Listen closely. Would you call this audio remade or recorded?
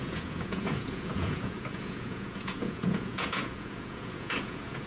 remade